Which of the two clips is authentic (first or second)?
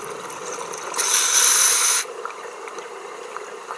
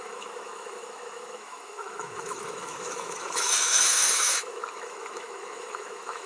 first